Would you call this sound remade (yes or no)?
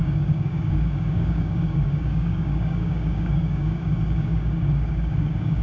yes